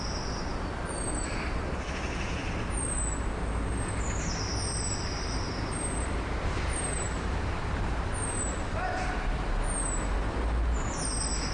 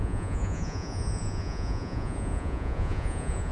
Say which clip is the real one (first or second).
first